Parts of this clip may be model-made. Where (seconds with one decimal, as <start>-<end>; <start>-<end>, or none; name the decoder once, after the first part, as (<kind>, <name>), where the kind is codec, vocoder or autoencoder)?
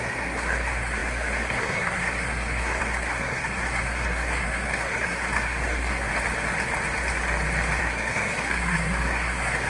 0.0-6.1 (codec, SNAC); 7.8-9.7